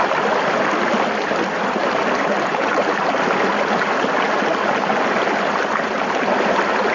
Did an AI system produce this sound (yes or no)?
no